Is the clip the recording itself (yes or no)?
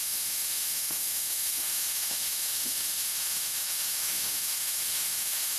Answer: no